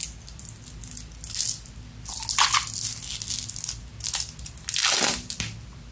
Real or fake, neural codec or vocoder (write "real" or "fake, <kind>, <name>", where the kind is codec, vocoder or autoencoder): real